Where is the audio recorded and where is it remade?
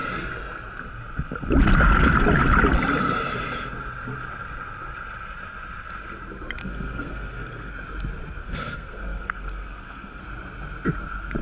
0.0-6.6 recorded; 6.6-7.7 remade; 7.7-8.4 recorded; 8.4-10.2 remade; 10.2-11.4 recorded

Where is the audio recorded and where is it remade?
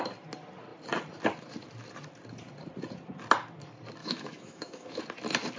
0.0-4.0 recorded; 4.0-5.0 remade; 5.0-5.6 recorded